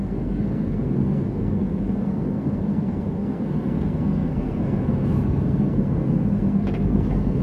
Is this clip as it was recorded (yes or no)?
no